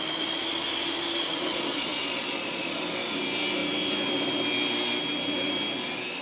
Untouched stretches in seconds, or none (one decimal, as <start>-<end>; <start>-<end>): 0.0-1.5; 2.8-6.2